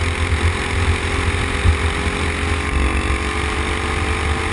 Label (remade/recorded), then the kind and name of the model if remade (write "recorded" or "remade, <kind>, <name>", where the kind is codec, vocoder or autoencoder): recorded